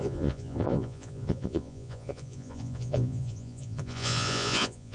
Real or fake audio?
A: fake